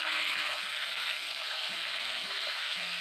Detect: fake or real fake